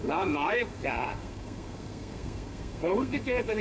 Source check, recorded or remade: remade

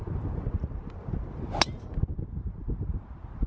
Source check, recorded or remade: recorded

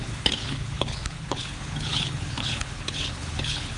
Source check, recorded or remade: remade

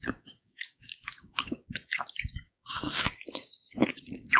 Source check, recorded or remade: remade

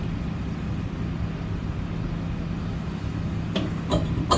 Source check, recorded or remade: recorded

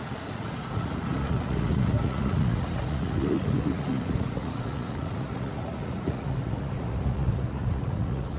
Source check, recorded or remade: remade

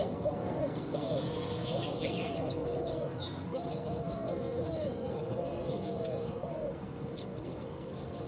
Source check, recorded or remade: remade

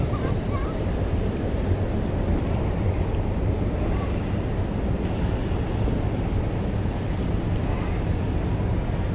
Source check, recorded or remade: recorded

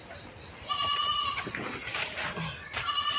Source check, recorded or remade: recorded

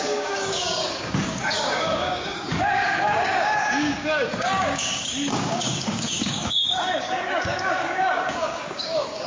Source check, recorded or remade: remade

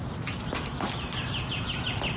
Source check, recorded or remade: recorded